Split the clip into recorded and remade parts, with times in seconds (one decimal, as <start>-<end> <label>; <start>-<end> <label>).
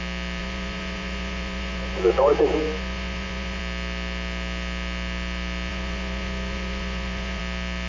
0.0-0.4 recorded; 0.4-3.6 remade; 3.6-5.7 recorded; 5.7-7.4 remade; 7.4-7.9 recorded